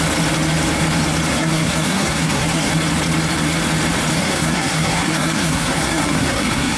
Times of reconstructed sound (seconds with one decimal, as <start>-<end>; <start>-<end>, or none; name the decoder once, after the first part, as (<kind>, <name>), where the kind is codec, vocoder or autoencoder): 1.3-2.7 (codec, SNAC); 4.1-6.8

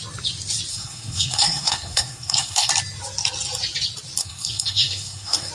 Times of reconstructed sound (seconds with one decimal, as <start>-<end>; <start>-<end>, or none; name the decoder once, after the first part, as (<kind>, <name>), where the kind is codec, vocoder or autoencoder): 0.7-2.7 (codec, SNAC); 4.2-5.5

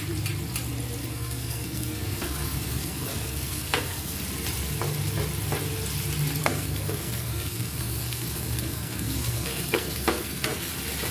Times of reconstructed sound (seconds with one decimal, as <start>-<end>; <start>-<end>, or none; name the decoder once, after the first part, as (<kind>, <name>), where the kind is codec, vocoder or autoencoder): 1.0-4.2 (codec, SNAC); 6.4-10.7